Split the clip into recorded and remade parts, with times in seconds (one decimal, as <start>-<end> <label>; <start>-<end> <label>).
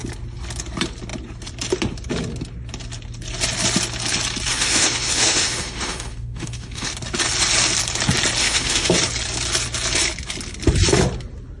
0.0-4.5 recorded; 4.5-6.9 remade; 6.9-8.4 recorded; 8.4-8.9 remade; 8.9-11.6 recorded